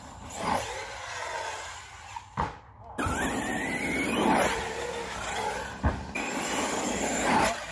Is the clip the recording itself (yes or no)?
yes